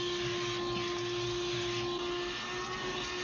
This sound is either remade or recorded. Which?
recorded